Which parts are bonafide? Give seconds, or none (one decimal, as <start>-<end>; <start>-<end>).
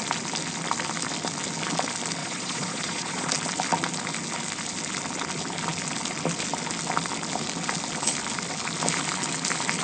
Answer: 0.0-2.2; 3.3-9.8